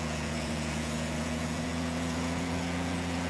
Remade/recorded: remade